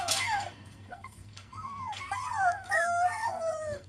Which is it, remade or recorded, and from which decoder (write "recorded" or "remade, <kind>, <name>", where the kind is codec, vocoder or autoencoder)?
remade, codec, SNAC